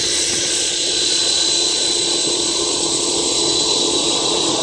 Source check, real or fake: fake